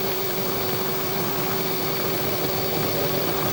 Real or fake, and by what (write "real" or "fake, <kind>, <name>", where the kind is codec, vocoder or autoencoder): real